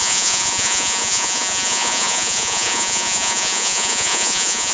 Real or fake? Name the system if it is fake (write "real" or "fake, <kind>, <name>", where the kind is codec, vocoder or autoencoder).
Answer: fake, vocoder, Vocos